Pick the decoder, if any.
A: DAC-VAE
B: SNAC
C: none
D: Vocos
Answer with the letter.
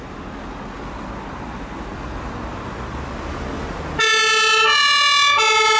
C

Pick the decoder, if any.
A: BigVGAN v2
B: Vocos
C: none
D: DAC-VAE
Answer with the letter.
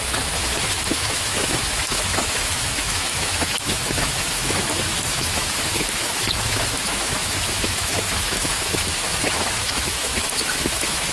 D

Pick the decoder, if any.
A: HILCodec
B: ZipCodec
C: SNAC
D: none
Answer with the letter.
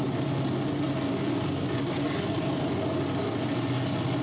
D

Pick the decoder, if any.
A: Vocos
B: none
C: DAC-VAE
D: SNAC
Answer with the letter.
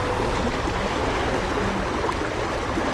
B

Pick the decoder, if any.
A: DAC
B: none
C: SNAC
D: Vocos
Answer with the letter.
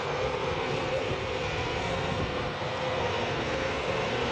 C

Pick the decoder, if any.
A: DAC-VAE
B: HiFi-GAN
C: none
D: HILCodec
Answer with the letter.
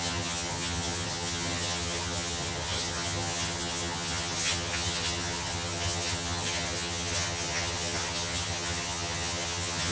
B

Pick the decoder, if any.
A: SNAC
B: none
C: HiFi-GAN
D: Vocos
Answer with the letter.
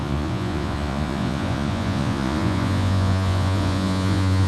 D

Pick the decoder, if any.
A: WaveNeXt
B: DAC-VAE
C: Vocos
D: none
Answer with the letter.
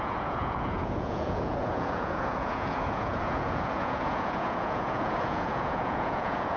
C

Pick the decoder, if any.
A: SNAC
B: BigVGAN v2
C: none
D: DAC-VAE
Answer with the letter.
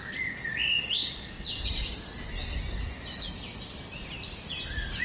C